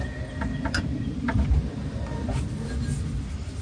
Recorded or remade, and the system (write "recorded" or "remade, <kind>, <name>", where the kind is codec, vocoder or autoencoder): recorded